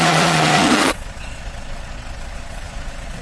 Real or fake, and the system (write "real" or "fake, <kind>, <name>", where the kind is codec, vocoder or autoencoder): fake, vocoder, Vocos